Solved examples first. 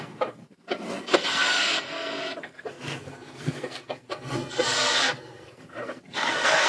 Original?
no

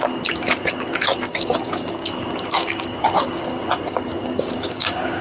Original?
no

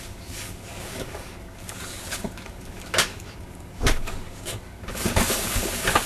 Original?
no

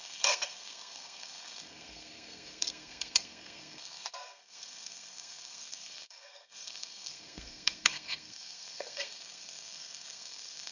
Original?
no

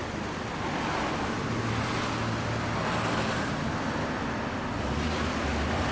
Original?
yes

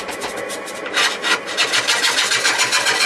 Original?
yes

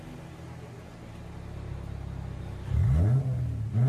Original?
yes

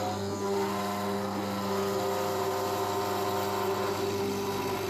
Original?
yes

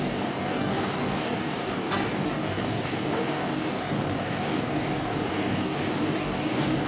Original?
no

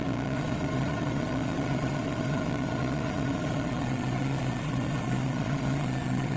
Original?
no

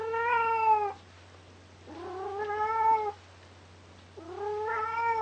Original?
yes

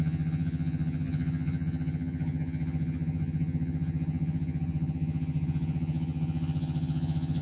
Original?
no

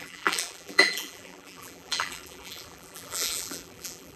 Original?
no